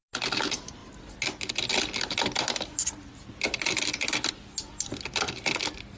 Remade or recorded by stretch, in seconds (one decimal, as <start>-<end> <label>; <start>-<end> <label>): 0.0-6.0 recorded